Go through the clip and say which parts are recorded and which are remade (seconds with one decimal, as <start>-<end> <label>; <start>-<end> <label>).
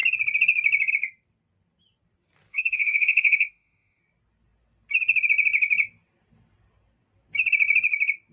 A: 0.0-2.5 recorded; 2.5-4.0 remade; 4.0-8.3 recorded